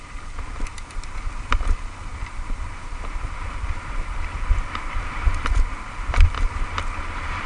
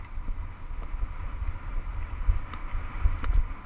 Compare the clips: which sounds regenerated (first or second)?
first